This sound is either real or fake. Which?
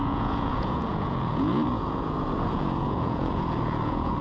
fake